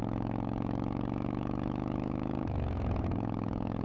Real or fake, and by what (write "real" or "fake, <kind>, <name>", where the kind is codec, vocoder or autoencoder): fake, autoencoder, DAC-VAE